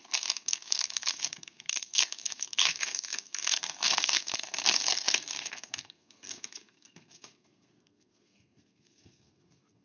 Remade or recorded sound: remade